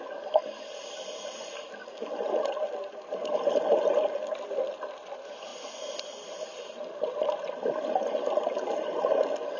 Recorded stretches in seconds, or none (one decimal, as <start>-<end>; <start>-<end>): 0.0-9.6